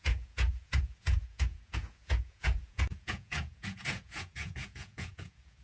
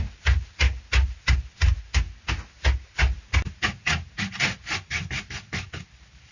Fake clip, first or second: first